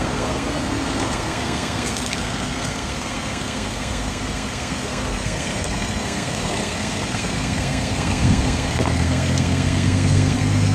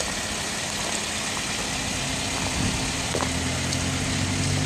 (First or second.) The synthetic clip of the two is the first